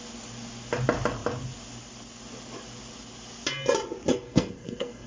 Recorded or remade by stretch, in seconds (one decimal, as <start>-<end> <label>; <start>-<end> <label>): 0.0-4.1 recorded; 4.1-5.1 remade